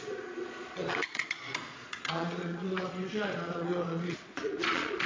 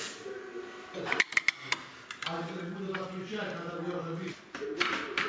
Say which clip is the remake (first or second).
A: first